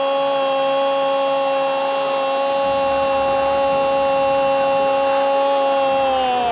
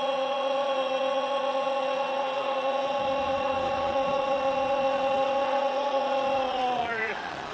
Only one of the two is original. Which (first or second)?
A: first